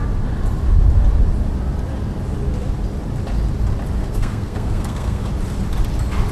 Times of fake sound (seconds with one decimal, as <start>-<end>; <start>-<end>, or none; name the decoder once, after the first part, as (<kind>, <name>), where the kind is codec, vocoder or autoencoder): 4.0-5.3 (codec, SNAC)